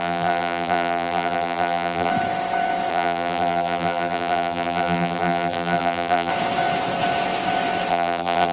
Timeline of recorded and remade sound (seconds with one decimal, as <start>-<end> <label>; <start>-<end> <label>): 0.0-2.1 remade; 2.1-2.9 recorded; 2.9-6.3 remade; 6.3-7.9 recorded; 7.9-8.5 remade